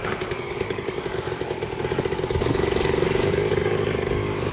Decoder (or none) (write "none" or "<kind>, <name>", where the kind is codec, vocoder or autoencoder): codec, DAC